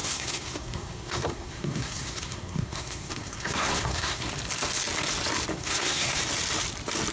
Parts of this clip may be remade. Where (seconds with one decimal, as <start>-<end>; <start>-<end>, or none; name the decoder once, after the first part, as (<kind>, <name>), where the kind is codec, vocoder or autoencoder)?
0.0-4.3 (codec, SNAC); 5.5-6.2